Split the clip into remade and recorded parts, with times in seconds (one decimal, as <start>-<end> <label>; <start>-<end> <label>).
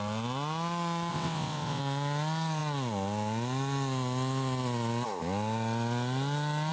0.0-1.1 recorded; 1.1-1.8 remade; 1.8-6.7 recorded